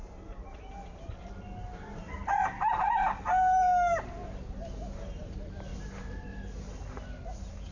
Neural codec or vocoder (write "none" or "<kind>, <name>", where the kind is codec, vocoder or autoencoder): none